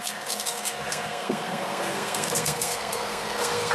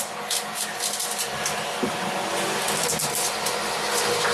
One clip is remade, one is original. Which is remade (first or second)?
first